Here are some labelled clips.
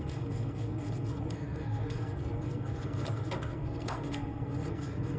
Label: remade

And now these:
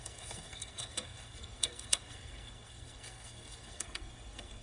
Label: remade